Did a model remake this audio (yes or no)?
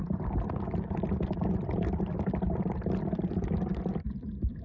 yes